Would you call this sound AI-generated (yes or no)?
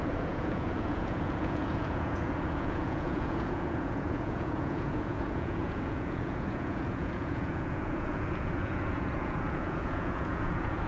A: yes